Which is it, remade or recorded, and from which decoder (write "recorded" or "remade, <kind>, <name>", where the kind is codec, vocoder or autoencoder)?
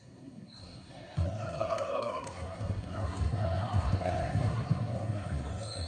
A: remade, codec, SNAC